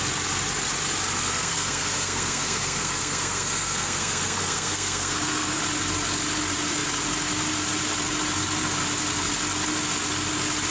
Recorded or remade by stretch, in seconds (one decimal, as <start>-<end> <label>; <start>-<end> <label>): 0.0-1.2 recorded; 1.2-5.6 remade; 5.6-10.7 recorded